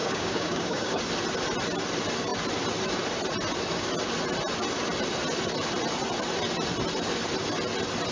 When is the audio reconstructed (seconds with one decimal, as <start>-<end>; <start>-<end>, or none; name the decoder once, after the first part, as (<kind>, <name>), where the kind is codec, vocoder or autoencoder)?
0.0-1.0 (codec, DAC)